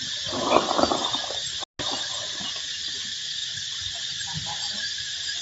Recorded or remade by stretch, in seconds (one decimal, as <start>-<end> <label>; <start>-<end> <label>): 0.0-5.4 recorded